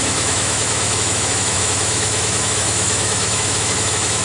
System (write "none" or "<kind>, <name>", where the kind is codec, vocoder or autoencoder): autoencoder, DAC-VAE